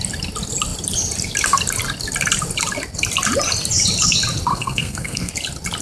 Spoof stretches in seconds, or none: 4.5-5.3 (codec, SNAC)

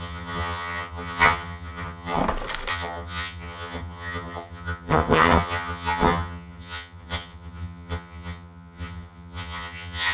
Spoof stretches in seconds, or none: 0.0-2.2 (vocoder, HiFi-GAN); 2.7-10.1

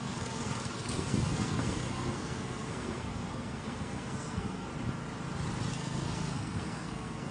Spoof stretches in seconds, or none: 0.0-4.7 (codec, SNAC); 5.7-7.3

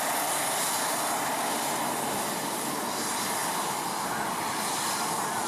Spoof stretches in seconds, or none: none

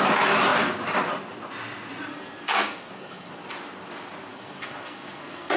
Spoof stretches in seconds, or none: 2.1-3.3 (codec, SNAC); 4.3-5.6

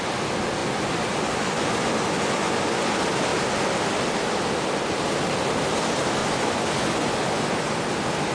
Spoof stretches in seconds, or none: 0.6-2.9 (vocoder, Vocos); 6.2-7.8

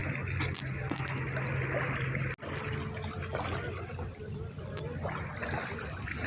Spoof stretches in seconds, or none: none